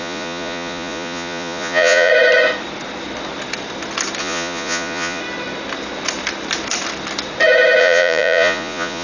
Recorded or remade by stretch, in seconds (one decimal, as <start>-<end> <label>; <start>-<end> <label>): 0.0-2.1 remade; 2.1-4.2 recorded; 4.2-5.2 remade; 5.2-7.8 recorded; 7.8-9.0 remade